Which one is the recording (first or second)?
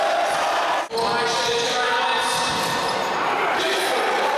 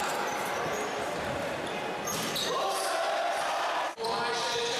first